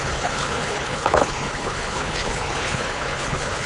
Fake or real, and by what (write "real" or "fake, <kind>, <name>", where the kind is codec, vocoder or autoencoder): fake, codec, HILCodec